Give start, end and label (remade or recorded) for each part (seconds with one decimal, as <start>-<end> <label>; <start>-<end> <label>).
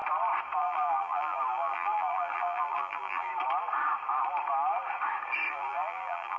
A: 0.0-0.6 recorded; 0.6-3.3 remade; 3.3-5.5 recorded; 5.5-6.4 remade